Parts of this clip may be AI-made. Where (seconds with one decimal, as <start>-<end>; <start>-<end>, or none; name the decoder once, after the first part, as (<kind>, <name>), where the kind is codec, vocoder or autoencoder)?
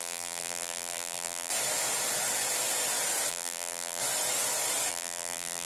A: 0.0-1.5 (vocoder, BigVGAN v2); 3.3-4.0; 4.9-5.7